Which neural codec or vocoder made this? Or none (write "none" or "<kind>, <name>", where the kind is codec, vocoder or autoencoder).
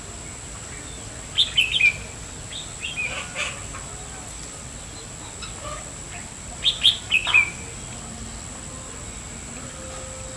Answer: none